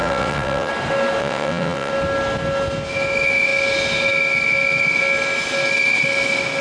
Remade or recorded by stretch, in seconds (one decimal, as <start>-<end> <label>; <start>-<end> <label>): 0.0-0.7 remade; 0.7-1.2 recorded; 1.2-1.9 remade; 1.9-6.6 recorded